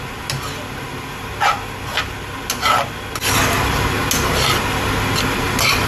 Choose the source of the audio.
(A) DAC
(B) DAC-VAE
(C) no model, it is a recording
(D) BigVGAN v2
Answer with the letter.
C